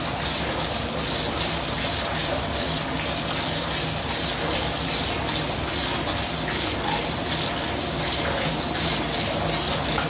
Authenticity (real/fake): real